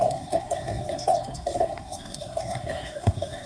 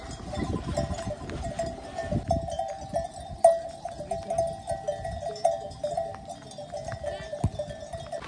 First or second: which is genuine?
second